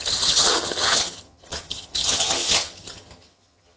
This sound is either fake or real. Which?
fake